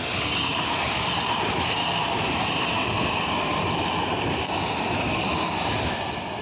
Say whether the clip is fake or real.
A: real